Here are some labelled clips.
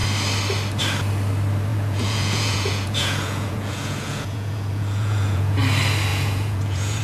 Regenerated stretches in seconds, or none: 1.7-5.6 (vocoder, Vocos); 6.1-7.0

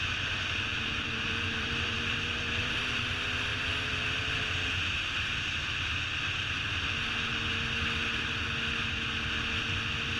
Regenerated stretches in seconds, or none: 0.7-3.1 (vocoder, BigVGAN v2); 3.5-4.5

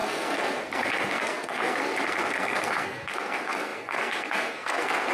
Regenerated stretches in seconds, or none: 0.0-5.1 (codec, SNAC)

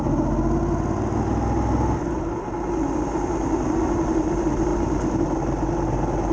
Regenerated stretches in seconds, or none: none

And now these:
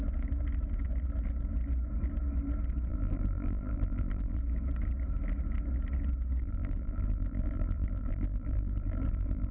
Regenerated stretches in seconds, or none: 2.9-4.4 (vocoder, BigVGAN v2); 6.4-9.5

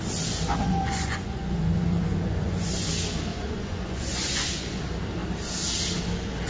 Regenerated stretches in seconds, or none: 0.5-2.9 (vocoder, Vocos); 3.3-4.8